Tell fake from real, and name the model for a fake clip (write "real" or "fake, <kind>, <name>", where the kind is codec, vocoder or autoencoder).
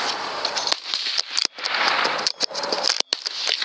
real